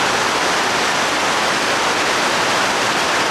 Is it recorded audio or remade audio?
recorded